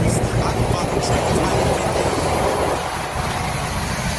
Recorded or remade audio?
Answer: recorded